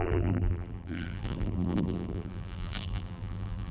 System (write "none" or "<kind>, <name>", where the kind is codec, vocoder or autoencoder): vocoder, BigVGAN v2